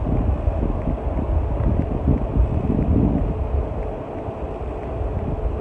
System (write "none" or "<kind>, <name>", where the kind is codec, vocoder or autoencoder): none